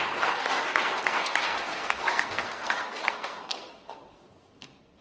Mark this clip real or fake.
fake